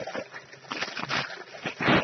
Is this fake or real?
real